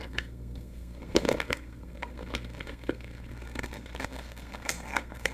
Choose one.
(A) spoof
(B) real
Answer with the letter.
A